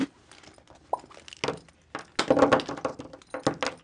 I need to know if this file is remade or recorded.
recorded